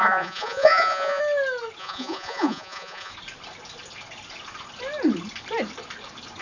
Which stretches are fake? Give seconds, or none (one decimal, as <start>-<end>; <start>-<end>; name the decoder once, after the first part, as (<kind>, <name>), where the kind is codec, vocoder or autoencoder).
0.0-1.2 (vocoder, Vocos); 1.8-3.1